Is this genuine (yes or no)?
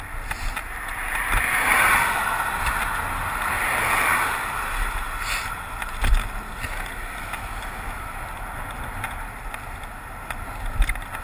yes